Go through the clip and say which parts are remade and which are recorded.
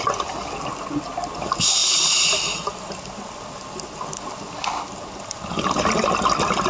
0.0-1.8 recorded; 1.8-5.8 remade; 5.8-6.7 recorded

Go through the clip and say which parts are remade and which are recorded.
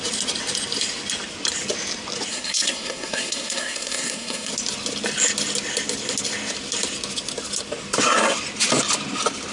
0.0-2.3 recorded; 2.3-4.5 remade; 4.5-9.5 recorded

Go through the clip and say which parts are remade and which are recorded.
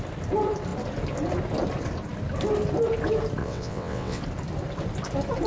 0.0-3.4 recorded; 3.4-4.2 remade; 4.2-5.5 recorded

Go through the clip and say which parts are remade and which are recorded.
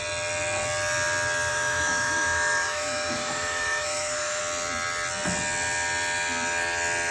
0.0-1.5 recorded; 1.5-4.4 remade; 4.4-7.1 recorded